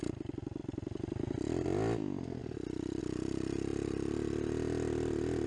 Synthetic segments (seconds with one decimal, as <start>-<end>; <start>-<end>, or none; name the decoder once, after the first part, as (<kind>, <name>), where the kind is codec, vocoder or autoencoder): 0.6-1.2 (vocoder, BigVGAN v2); 2.4-3.0